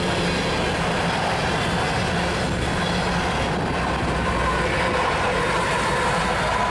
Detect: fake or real real